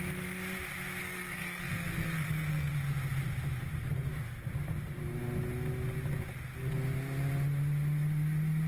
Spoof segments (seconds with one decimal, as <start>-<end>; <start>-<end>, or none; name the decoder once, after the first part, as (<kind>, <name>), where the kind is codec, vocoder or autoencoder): 1.0-2.7 (codec, SNAC)

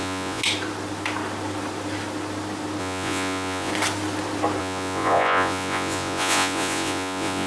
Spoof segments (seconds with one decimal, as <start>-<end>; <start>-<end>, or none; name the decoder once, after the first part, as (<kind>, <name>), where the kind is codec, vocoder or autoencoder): 0.0-0.4 (vocoder, Vocos); 2.8-3.7; 4.6-7.5